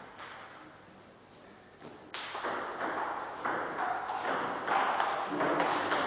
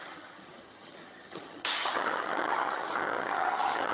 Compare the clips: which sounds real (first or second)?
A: first